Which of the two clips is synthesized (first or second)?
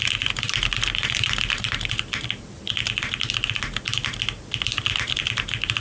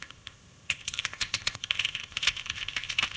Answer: second